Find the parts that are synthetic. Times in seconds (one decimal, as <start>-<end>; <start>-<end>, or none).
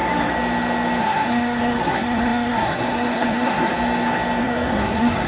1.0-3.7; 4.4-5.3